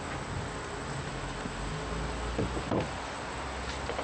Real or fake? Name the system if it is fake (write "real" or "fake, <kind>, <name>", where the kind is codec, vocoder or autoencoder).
real